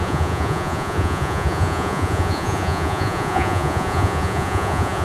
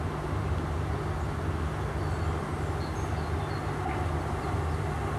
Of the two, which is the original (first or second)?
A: second